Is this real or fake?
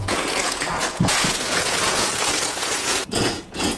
fake